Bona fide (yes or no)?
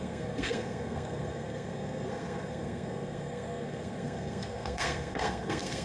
no